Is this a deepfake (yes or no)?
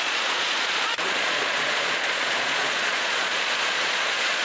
yes